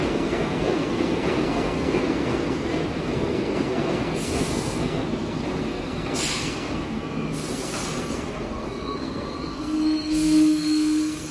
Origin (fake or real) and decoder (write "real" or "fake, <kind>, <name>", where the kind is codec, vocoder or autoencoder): fake, codec, SNAC